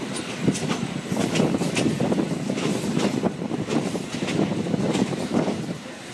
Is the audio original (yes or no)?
yes